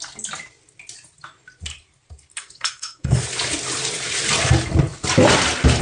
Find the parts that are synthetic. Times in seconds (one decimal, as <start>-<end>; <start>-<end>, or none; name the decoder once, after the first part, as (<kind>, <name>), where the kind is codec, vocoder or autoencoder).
2.3-3.2 (codec, SNAC)